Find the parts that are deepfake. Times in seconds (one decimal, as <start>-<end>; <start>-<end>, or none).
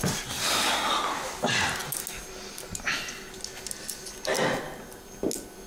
none